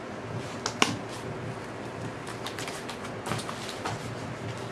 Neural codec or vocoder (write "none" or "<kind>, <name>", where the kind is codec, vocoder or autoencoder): none